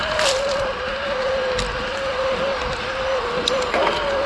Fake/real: real